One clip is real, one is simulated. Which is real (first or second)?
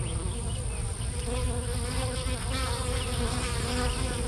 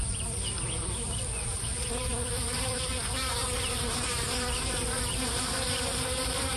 first